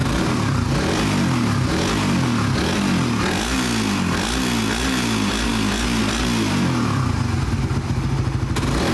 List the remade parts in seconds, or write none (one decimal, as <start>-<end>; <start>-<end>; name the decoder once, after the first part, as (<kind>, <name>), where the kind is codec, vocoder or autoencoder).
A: 0.0-1.7 (vocoder, BigVGAN v2)